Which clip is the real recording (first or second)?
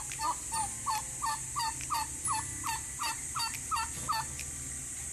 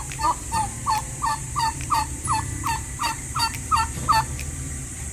first